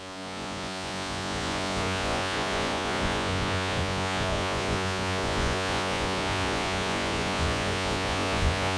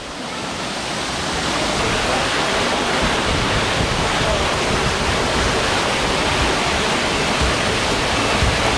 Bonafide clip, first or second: second